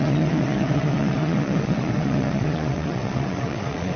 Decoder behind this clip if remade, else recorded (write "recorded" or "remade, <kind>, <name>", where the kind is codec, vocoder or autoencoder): remade, vocoder, WaveNeXt